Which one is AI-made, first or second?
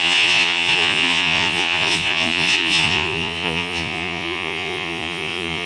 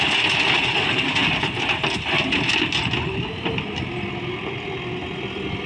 first